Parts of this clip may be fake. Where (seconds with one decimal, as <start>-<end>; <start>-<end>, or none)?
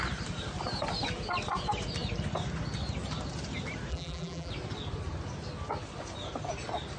3.9-4.5